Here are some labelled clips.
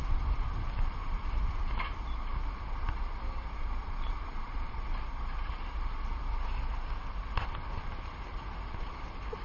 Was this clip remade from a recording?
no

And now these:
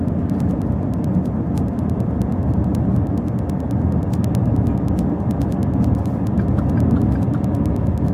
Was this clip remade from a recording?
no